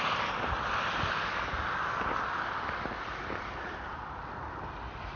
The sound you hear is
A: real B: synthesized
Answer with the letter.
A